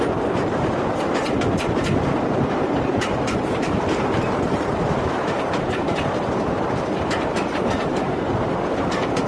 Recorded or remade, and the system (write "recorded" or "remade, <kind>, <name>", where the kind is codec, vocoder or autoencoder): remade, vocoder, BigVGAN v2